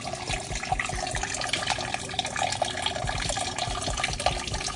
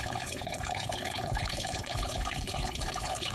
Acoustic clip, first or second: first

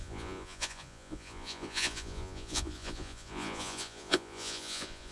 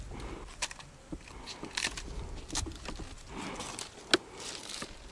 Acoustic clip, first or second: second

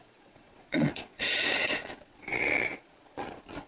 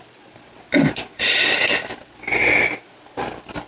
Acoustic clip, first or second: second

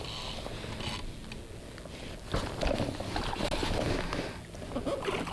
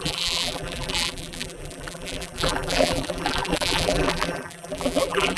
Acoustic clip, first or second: first